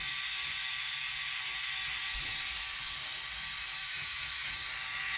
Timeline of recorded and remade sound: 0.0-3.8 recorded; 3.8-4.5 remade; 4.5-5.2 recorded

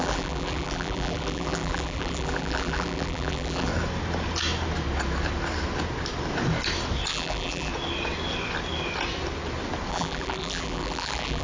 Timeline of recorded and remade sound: 0.0-3.7 remade; 3.7-7.1 recorded; 7.1-7.7 remade; 7.7-9.9 recorded; 9.9-11.4 remade

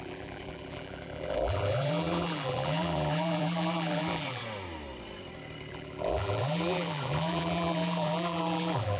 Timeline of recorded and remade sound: 0.0-4.4 remade; 4.4-5.7 recorded; 5.7-9.0 remade

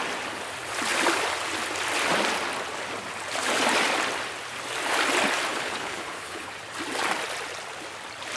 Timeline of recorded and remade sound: 0.0-5.5 recorded; 5.5-6.5 remade; 6.5-8.4 recorded

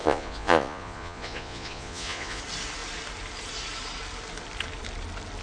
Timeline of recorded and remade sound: 0.0-2.4 remade; 2.4-5.4 recorded